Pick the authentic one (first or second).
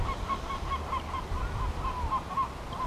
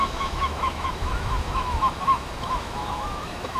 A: first